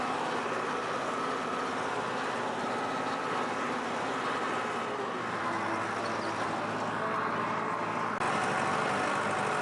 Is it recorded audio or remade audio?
recorded